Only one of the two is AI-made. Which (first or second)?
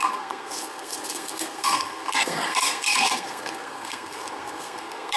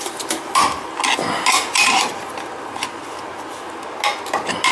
first